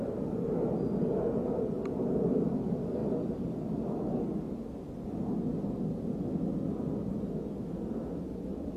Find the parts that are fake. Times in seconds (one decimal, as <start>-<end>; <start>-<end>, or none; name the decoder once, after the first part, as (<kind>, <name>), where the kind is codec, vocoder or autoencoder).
none